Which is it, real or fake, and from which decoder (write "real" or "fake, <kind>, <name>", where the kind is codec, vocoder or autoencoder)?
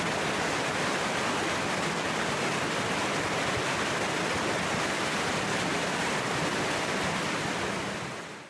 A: real